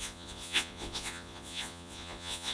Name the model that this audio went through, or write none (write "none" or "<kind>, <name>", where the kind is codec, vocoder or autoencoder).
vocoder, Vocos